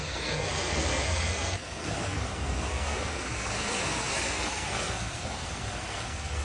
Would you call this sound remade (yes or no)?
yes